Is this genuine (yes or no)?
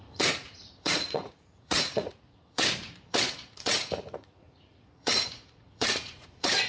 no